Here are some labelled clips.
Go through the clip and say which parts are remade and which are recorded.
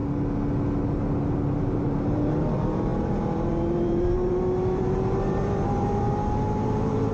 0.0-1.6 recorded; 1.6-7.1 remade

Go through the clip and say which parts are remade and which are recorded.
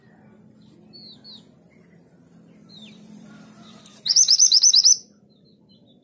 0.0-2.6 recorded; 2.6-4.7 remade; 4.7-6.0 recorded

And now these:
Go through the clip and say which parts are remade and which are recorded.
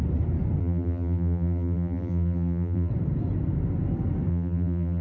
0.0-0.6 recorded; 0.6-2.9 remade; 2.9-4.3 recorded; 4.3-5.0 remade